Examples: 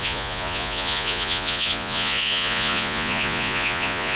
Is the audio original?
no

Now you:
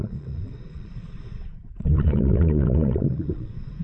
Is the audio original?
no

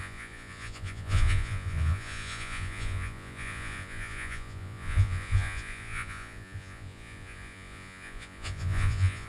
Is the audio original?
no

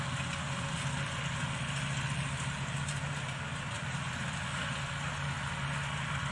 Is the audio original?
yes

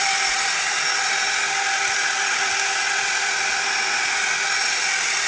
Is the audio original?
yes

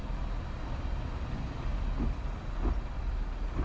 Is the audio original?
yes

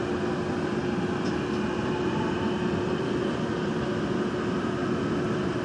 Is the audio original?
yes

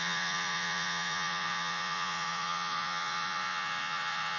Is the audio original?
no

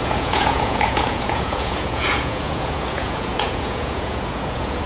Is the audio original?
no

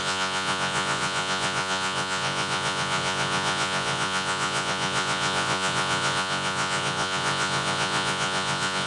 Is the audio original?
no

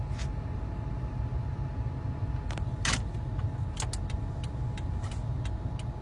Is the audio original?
yes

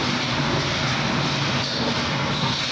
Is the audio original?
yes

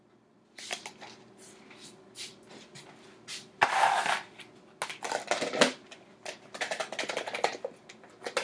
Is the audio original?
yes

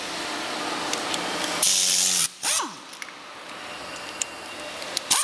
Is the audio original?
yes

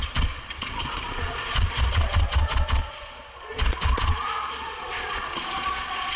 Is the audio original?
no